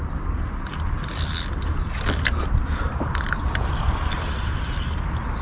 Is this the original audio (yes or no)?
yes